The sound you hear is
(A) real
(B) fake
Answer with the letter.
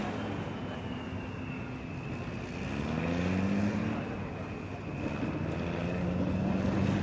A